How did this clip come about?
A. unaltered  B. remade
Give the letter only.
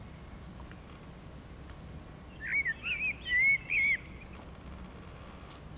A